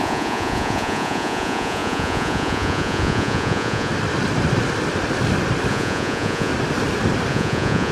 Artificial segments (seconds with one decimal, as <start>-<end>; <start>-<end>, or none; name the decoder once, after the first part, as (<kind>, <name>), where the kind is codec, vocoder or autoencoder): 0.0-3.9 (vocoder, Vocos); 5.7-6.5; 7.3-7.9